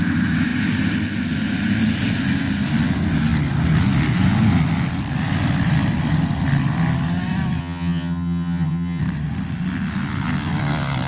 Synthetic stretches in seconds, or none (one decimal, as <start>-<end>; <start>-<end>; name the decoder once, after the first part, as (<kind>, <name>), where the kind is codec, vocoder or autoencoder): 7.6-9.0 (vocoder, HiFi-GAN)

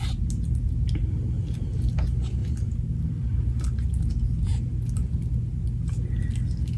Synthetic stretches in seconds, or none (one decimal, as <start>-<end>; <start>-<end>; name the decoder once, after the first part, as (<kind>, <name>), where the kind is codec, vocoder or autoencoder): none

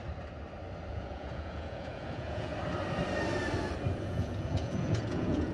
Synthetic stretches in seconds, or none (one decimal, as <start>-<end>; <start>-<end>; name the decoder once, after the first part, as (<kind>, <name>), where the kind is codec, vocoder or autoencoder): 0.9-2.5 (vocoder, Vocos); 4.0-5.5

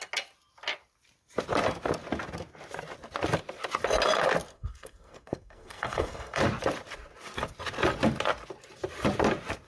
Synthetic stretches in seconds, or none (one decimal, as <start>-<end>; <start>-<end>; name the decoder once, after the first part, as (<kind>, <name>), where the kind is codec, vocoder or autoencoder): 4.5-6.4 (codec, SNAC)

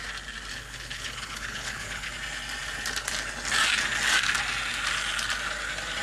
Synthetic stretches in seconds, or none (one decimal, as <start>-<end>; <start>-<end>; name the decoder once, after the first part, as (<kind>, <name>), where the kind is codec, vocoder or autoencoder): 0.5-2.1 (codec, HILCodec)

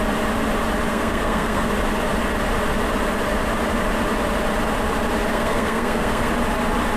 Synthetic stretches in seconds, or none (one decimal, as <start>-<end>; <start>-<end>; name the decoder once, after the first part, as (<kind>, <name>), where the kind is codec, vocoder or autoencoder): 0.9-1.7 (codec, SNAC); 5.3-6.3

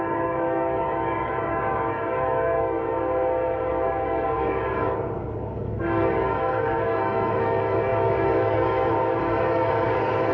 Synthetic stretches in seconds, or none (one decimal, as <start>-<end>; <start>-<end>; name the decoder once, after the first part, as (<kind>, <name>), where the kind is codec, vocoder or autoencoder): 0.0-2.9 (codec, DAC); 3.7-10.3

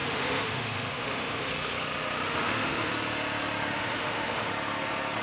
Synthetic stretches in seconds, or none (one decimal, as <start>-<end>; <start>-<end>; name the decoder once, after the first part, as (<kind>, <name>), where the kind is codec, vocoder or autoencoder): 0.0-1.5 (autoencoder, DAC-VAE); 2.3-2.9; 3.7-4.5